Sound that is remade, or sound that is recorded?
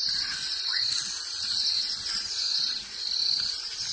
recorded